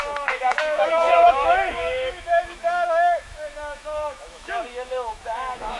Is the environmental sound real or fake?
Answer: fake